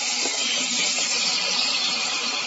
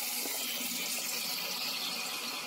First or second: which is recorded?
second